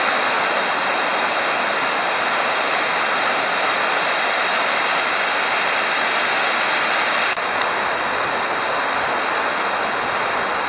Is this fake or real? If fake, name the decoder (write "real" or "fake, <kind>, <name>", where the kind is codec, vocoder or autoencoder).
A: real